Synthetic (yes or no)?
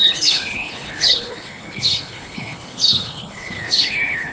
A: yes